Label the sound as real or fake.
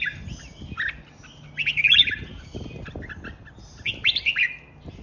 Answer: real